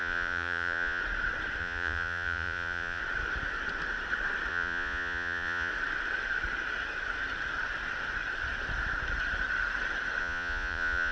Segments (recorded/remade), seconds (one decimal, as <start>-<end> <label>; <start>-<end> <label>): 0.0-1.0 remade; 1.0-1.6 recorded; 1.6-3.0 remade; 3.0-4.5 recorded; 4.5-5.7 remade; 5.7-10.2 recorded; 10.2-11.1 remade